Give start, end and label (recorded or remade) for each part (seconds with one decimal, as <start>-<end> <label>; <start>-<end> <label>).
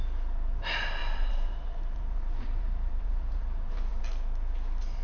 0.0-1.0 recorded; 1.0-4.0 remade; 4.0-5.0 recorded